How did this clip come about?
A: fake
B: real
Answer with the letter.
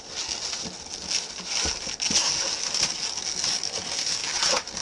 B